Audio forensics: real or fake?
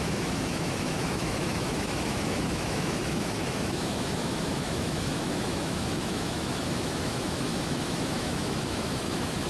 fake